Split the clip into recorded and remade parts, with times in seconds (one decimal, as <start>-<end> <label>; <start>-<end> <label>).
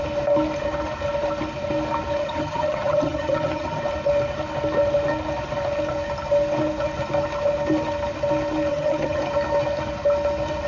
0.0-2.2 recorded; 2.2-3.8 remade; 3.8-8.7 recorded; 8.7-9.2 remade; 9.2-10.7 recorded